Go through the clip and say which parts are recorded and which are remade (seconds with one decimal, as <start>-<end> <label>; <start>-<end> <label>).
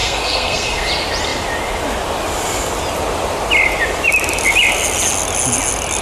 0.0-0.9 remade; 0.9-6.0 recorded